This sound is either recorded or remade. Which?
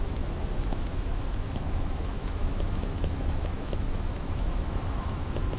remade